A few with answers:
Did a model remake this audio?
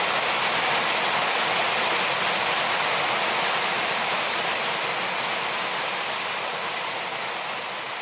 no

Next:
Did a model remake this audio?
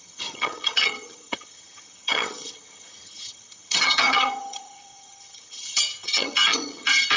yes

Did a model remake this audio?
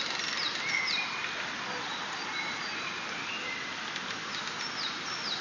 no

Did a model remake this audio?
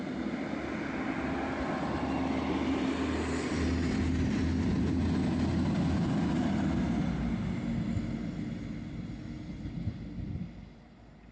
no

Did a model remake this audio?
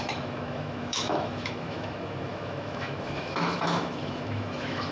yes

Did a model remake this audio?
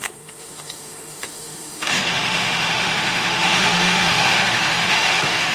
yes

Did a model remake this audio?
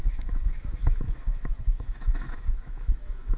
yes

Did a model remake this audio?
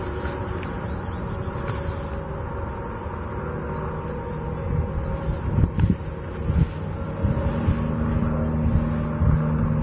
no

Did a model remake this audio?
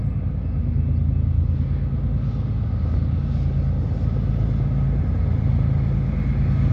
no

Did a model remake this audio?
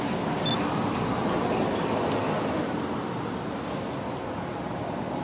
no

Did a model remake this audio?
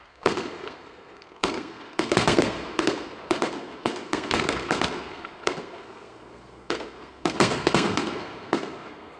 yes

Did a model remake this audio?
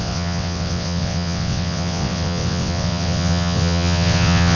yes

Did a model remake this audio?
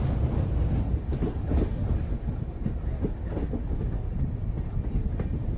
no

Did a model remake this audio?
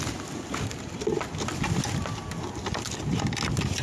no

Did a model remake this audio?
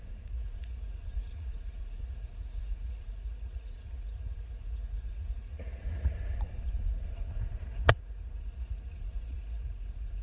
yes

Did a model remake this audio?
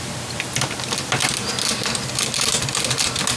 no